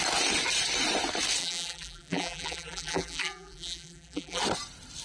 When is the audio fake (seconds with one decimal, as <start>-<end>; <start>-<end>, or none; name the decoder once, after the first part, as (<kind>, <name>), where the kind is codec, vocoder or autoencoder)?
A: 1.4-4.4 (vocoder, BigVGAN v2)